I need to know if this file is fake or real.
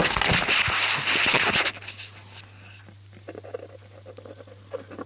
real